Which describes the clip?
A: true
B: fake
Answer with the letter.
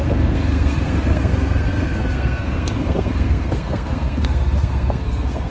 B